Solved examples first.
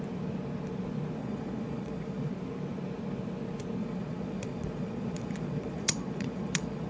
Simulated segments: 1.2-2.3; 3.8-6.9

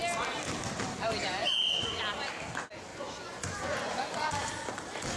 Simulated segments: 1.4-2.0; 2.9-4.3

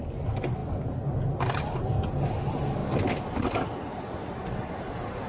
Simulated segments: 2.8-4.7